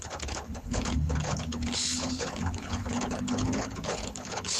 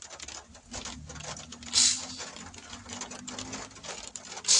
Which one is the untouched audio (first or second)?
second